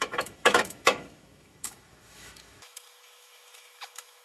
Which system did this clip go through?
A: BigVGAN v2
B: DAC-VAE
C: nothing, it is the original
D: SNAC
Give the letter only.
B